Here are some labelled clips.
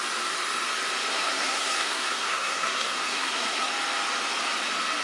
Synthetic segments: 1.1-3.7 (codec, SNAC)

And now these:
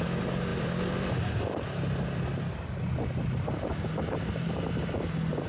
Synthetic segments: none

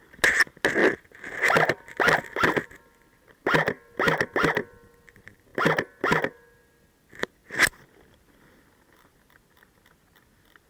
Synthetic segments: none